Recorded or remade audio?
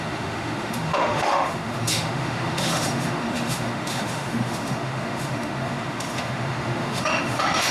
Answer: remade